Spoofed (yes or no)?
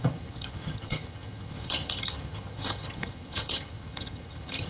yes